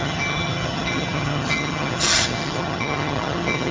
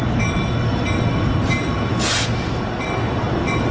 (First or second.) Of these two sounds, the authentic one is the second